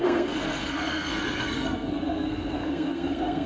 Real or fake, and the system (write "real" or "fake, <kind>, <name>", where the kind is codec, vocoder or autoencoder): fake, codec, SNAC